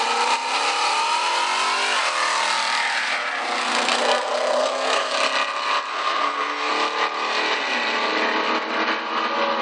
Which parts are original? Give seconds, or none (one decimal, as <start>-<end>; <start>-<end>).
0.0-3.6; 5.1-5.9; 6.7-9.6